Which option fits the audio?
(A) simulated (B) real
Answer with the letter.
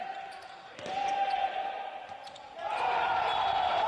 A